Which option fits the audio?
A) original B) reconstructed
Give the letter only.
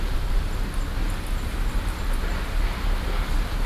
A